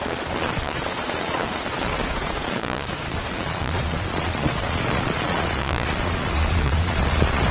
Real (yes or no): no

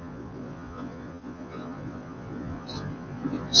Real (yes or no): no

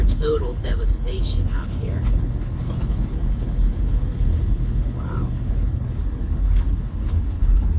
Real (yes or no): no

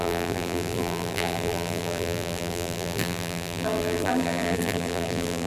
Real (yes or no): no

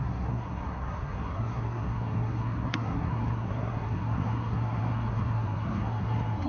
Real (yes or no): no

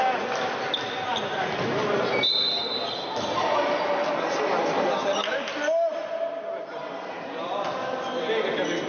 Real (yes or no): yes